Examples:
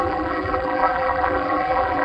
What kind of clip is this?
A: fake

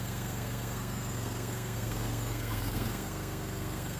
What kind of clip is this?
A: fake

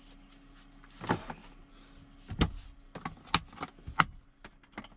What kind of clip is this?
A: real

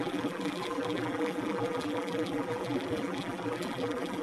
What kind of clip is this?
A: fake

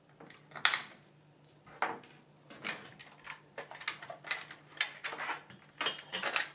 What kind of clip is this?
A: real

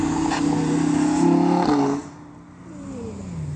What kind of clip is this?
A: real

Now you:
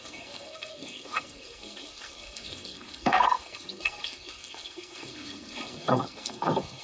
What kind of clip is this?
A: fake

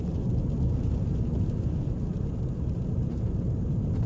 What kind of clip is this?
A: real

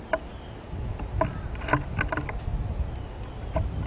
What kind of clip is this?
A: real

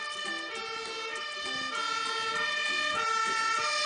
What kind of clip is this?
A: real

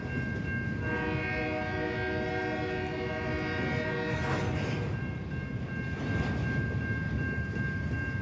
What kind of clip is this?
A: real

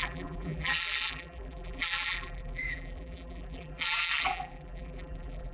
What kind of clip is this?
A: fake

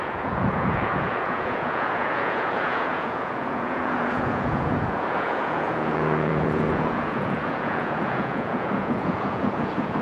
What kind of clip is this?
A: fake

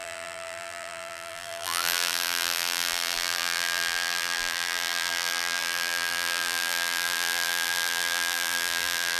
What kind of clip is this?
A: fake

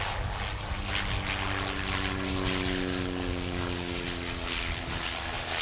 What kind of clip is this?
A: real